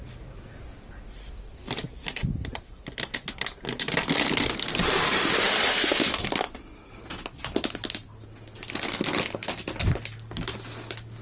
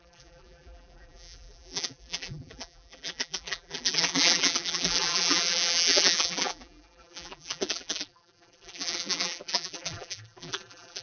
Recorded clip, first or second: first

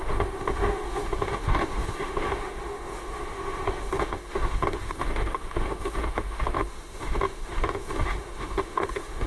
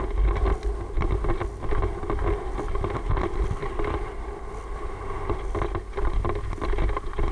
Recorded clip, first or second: second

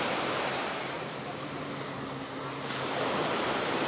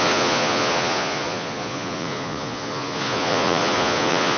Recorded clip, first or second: first